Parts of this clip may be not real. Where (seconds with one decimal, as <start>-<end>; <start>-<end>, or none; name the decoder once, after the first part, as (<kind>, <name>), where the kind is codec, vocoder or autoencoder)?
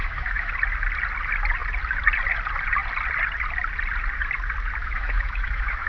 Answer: 0.0-0.5 (autoencoder, DAC-VAE); 4.8-5.9